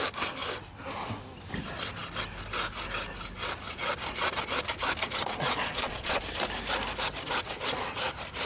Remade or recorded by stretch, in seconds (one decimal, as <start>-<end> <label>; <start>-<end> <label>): 0.0-5.2 recorded; 5.2-6.2 remade; 6.2-8.5 recorded